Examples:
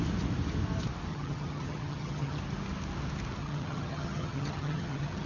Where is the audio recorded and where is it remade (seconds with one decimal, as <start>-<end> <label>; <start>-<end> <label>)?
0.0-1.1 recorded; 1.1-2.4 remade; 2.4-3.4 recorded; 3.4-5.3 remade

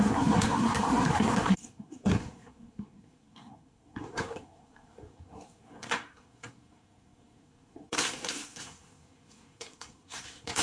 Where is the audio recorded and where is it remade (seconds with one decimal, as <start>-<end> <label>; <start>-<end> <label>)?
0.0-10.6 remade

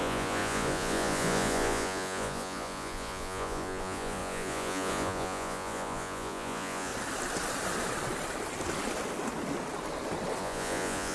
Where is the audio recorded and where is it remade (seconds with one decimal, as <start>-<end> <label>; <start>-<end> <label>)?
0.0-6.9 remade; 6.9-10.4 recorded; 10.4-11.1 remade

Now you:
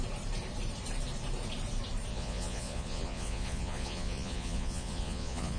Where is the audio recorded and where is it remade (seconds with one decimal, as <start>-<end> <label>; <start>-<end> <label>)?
0.0-2.1 recorded; 2.1-5.6 remade

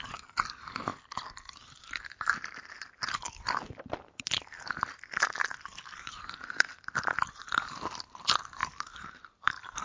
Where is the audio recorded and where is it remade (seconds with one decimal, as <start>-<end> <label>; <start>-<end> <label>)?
0.0-5.7 recorded; 5.7-7.4 remade; 7.4-9.8 recorded